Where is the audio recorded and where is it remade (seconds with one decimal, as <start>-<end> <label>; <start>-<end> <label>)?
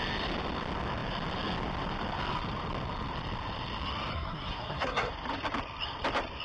0.0-4.1 recorded; 4.1-5.1 remade; 5.1-6.4 recorded